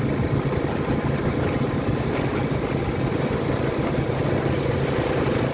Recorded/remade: recorded